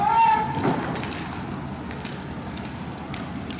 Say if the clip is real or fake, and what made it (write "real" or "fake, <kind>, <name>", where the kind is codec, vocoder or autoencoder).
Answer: real